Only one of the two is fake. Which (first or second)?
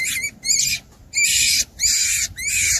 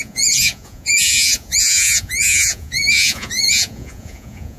second